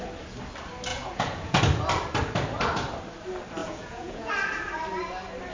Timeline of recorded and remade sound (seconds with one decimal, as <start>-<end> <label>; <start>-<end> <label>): 0.0-0.9 recorded; 0.9-1.6 remade; 1.6-3.6 recorded; 3.6-4.3 remade; 4.3-5.5 recorded